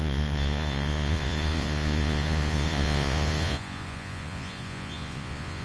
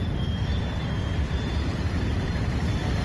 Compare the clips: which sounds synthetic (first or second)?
first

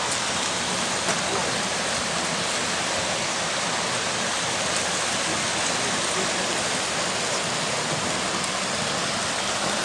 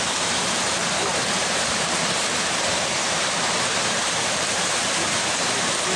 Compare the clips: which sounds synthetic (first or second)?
second